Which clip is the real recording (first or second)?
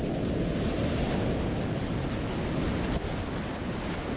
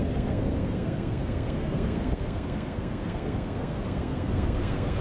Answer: first